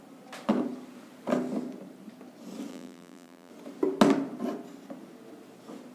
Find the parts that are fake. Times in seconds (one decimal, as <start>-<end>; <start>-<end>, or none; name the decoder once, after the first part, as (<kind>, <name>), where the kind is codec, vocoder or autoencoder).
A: 2.7-3.5 (vocoder, BigVGAN v2)